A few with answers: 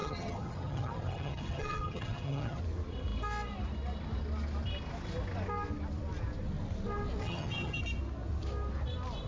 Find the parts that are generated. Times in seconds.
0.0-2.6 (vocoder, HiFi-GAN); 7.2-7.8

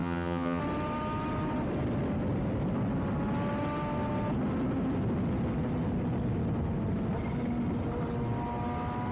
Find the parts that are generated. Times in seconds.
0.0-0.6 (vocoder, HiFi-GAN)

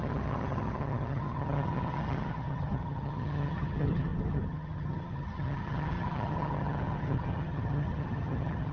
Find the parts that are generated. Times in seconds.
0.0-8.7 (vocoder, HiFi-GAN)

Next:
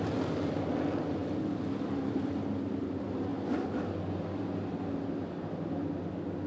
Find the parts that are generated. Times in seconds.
none